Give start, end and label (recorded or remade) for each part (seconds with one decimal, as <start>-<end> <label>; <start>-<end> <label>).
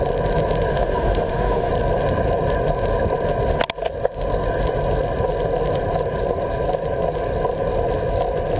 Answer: 0.0-0.7 recorded; 0.7-1.7 remade; 1.7-8.6 recorded